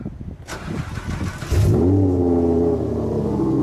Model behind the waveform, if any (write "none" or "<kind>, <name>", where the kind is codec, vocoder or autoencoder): none